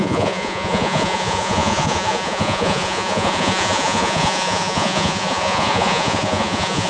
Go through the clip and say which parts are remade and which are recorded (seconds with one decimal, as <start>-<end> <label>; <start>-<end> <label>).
0.0-6.9 remade